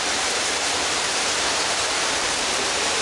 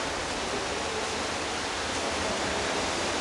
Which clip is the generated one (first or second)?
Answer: first